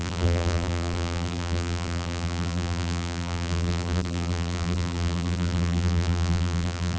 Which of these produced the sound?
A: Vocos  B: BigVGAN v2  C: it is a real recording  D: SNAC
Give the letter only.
B